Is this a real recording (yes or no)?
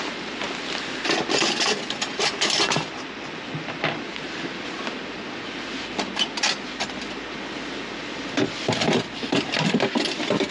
yes